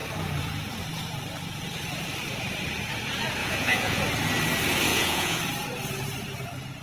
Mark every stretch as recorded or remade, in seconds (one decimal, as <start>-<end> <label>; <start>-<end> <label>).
0.0-3.4 recorded; 3.4-4.0 remade; 4.0-4.9 recorded; 4.9-5.4 remade; 5.4-6.8 recorded